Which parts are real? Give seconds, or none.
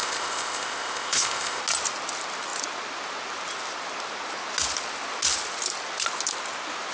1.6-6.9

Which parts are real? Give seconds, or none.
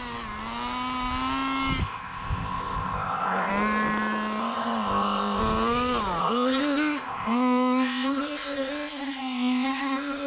0.0-1.8; 3.5-4.4; 5.4-6.2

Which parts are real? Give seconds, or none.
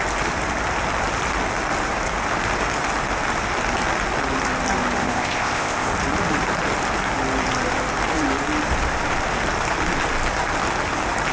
0.0-5.0; 5.9-11.3